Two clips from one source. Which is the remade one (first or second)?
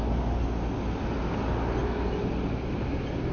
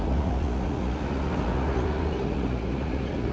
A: second